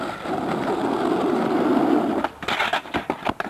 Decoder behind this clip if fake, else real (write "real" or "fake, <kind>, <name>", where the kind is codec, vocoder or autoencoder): real